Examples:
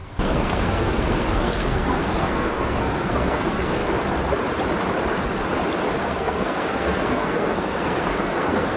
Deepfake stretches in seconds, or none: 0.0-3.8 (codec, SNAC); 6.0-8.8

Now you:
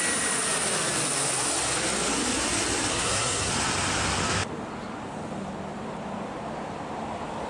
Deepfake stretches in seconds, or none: 2.9-3.5 (codec, SNAC)

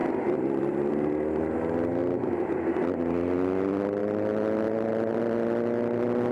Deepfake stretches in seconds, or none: 0.0-0.9 (vocoder, BigVGAN v2); 2.0-2.5; 4.0-5.2